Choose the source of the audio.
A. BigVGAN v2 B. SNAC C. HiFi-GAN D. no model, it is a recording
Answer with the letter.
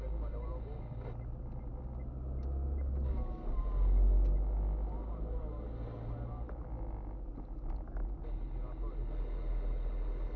D